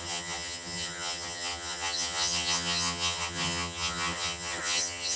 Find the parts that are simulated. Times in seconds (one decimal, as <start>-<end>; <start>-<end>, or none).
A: 0.0-5.2